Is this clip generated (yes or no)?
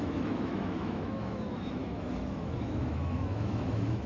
yes